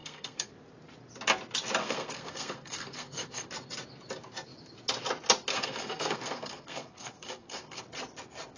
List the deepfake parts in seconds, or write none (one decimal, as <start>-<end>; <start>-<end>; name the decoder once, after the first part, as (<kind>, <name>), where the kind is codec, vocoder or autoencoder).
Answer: 0.0-0.5 (codec, SNAC); 1.8-3.5; 5.5-7.8